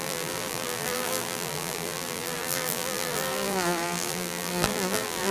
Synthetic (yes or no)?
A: yes